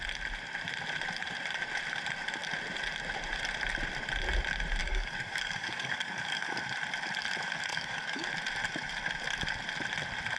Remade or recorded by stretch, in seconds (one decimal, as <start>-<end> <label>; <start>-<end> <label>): 0.0-4.8 recorded; 4.8-6.5 remade; 6.5-7.7 recorded; 7.7-8.3 remade; 8.3-10.4 recorded